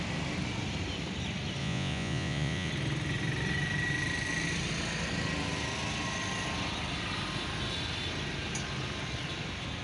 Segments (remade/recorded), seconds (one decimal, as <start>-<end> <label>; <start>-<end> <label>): 0.0-1.6 recorded; 1.6-2.7 remade; 2.7-9.8 recorded